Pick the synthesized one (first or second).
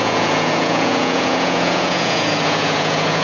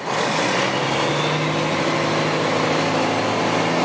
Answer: first